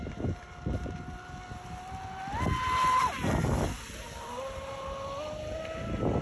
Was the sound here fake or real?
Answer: real